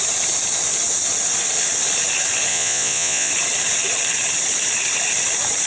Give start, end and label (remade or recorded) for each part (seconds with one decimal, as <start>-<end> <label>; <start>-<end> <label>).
0.0-2.5 recorded; 2.5-3.3 remade; 3.3-5.7 recorded

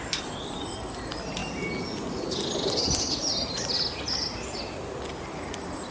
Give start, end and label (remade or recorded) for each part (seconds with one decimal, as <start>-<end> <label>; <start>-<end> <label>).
0.0-5.9 recorded

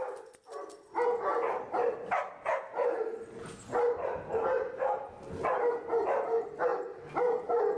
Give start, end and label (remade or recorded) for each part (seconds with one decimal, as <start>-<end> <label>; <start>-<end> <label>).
0.0-7.8 recorded

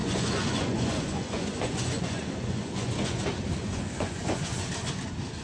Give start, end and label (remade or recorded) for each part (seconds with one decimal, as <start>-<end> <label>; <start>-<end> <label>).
0.0-3.2 remade; 3.2-3.6 recorded; 3.6-4.7 remade; 4.7-5.4 recorded

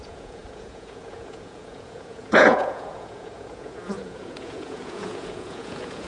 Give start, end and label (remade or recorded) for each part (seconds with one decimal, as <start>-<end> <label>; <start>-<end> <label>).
0.0-6.1 remade

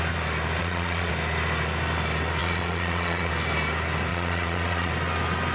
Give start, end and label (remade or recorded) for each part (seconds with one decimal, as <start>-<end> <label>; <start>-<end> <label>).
0.0-0.6 recorded; 0.6-1.1 remade; 1.1-2.4 recorded; 2.4-3.3 remade; 3.3-4.1 recorded; 4.1-4.9 remade; 4.9-5.5 recorded

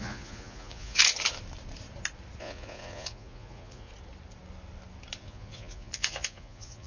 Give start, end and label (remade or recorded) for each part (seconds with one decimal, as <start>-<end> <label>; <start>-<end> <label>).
0.0-1.0 remade; 1.0-2.4 recorded; 2.4-3.9 remade; 3.9-5.2 recorded; 5.2-6.9 remade